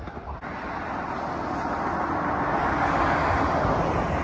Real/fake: real